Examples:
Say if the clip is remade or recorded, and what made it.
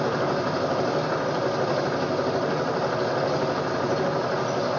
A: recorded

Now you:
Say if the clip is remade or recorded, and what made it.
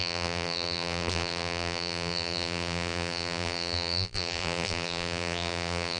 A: remade, vocoder, BigVGAN v2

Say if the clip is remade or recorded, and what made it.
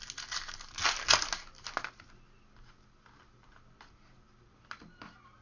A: recorded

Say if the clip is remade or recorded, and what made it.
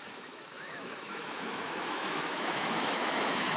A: remade, autoencoder, DAC-VAE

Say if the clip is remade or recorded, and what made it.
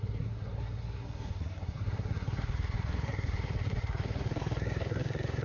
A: remade, codec, SNAC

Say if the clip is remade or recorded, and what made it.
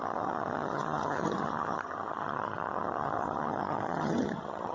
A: remade, vocoder, HiFi-GAN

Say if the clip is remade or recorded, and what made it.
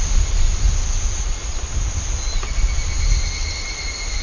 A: recorded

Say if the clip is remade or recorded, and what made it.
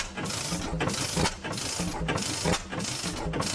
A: recorded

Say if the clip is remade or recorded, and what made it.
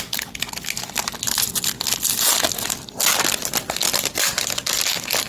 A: recorded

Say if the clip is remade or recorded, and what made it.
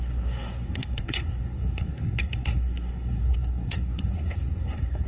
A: remade, codec, SNAC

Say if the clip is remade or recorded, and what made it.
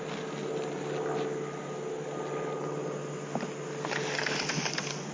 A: recorded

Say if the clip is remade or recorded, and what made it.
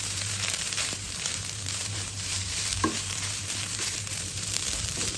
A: remade, vocoder, BigVGAN v2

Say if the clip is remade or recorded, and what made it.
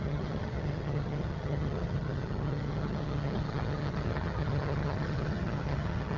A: remade, vocoder, HiFi-GAN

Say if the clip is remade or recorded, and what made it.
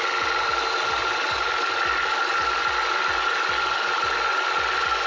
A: recorded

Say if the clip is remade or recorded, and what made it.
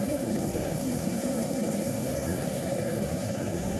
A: remade, codec, SNAC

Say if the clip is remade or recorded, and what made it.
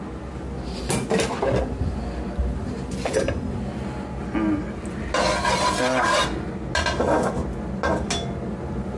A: recorded